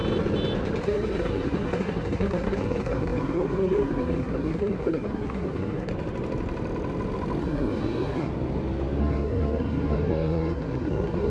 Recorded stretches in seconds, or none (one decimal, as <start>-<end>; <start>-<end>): 0.0-0.8; 5.9-7.4; 8.3-9.0